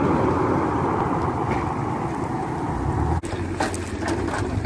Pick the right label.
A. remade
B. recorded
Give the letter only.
B